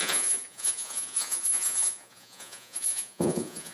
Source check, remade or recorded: remade